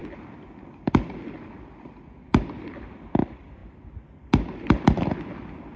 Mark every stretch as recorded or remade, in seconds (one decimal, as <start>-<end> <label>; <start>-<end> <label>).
0.0-5.8 recorded